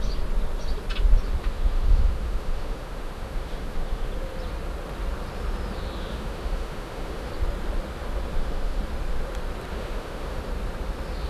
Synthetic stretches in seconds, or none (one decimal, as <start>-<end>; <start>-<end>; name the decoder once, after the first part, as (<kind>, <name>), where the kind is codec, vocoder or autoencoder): 1.4-4.1 (autoencoder, DAC-VAE); 6.0-7.3; 8.3-8.8; 9.7-10.4